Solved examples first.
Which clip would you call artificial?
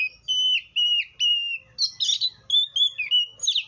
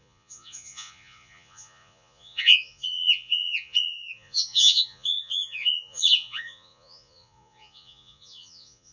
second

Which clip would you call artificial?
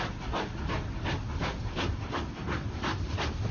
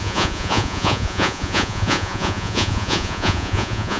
second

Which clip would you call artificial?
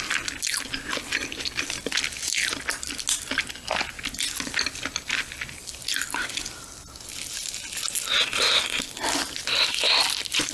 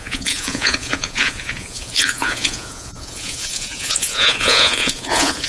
second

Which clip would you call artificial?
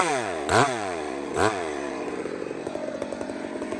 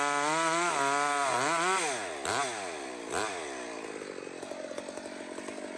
first